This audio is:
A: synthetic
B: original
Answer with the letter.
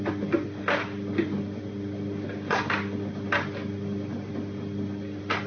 B